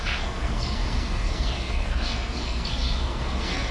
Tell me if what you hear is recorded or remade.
remade